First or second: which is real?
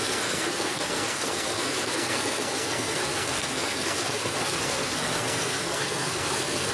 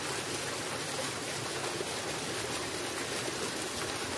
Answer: second